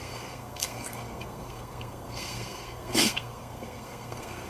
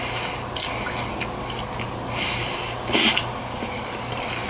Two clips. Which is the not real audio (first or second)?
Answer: first